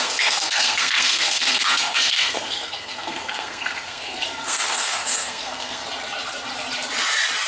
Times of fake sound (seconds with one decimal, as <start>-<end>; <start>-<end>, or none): 0.0-5.8